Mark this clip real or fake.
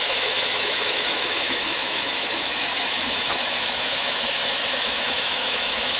fake